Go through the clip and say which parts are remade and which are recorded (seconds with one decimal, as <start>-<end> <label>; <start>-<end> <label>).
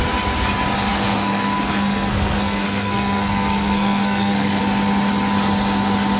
0.0-0.9 recorded; 0.9-4.6 remade; 4.6-6.2 recorded